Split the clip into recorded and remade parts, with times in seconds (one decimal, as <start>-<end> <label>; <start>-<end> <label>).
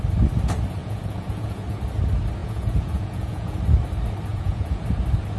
0.0-0.8 recorded; 0.8-1.8 remade; 1.8-2.4 recorded; 2.4-3.6 remade; 3.6-4.3 recorded; 4.3-4.8 remade; 4.8-5.4 recorded